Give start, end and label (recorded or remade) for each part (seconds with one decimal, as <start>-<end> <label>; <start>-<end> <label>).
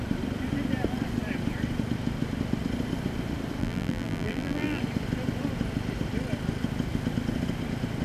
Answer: 0.0-3.6 recorded; 3.6-4.8 remade; 4.8-8.0 recorded